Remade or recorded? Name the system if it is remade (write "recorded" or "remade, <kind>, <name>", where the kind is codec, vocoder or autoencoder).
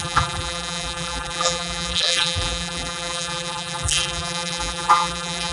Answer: remade, vocoder, BigVGAN v2